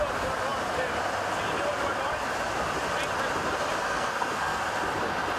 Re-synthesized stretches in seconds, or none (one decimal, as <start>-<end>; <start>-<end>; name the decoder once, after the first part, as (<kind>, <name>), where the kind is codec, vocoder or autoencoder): 3.8-4.6 (codec, SNAC)